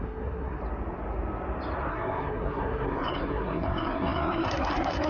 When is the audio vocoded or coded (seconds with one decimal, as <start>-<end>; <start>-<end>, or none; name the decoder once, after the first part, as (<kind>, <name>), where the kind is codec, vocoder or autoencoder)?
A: 0.0-0.6 (codec, SNAC); 1.9-5.1